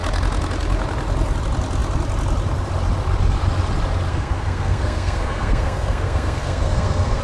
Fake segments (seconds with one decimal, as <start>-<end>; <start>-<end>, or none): 4.1-7.2